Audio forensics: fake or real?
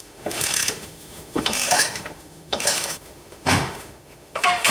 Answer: fake